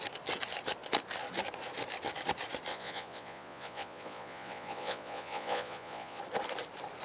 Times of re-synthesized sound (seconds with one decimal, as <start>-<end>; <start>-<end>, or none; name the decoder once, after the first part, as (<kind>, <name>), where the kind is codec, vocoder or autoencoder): 2.7-6.2 (vocoder, Vocos)